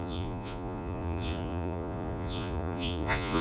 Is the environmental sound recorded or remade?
remade